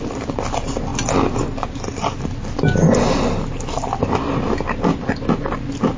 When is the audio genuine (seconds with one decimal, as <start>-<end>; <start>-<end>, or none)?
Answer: 0.0-6.0